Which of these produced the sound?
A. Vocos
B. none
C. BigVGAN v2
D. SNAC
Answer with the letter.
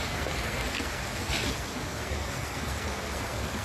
D